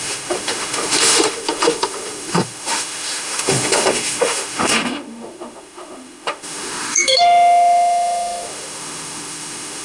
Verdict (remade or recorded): remade